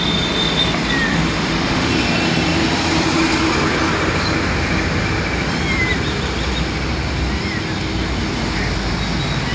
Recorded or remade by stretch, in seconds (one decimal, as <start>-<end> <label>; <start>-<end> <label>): 0.0-1.1 recorded; 1.1-1.9 remade; 1.9-9.5 recorded